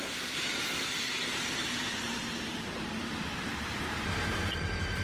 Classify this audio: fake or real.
fake